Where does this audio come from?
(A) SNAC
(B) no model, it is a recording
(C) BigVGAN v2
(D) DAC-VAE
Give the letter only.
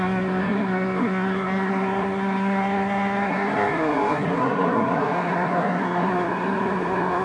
A